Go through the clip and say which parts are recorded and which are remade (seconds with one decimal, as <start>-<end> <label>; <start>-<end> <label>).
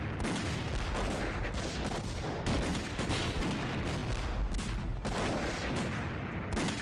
0.0-2.7 recorded; 2.7-3.4 remade; 3.4-6.8 recorded